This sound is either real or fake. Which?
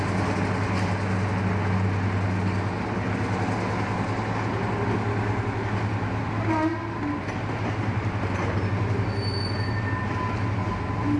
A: real